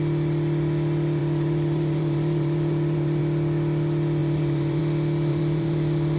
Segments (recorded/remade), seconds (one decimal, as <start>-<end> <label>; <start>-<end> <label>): 0.0-1.2 recorded; 1.2-3.2 remade; 3.2-4.2 recorded; 4.2-4.8 remade; 4.8-5.3 recorded; 5.3-6.2 remade